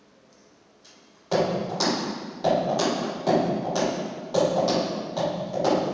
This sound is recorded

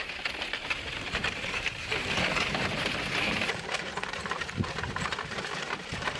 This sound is remade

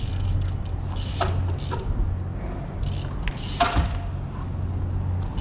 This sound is recorded